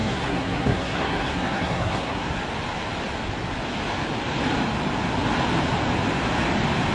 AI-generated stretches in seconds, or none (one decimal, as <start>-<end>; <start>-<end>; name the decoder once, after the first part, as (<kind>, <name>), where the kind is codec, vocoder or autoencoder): 0.0-2.4 (codec, SNAC)